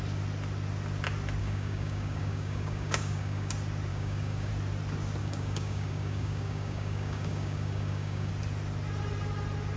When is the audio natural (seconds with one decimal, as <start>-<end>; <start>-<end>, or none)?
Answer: 0.0-1.4; 3.5-3.9; 4.5-5.2; 8.3-9.8